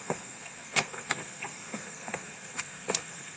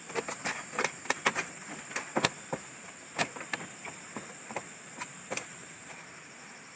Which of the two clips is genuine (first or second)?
second